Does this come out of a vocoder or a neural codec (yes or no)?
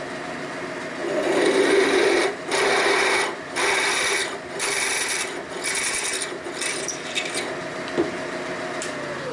no